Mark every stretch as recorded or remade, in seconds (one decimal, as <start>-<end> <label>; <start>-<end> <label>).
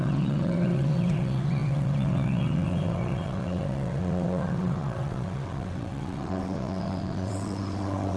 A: 0.0-8.2 remade